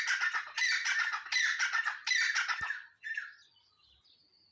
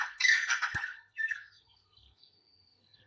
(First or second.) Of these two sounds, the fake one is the second